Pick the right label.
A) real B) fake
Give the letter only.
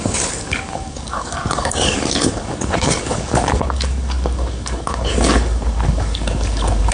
B